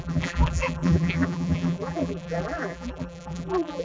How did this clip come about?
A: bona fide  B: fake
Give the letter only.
B